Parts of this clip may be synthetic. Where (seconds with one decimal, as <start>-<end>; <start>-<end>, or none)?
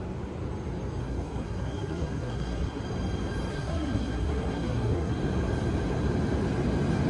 1.0-2.8; 3.5-5.1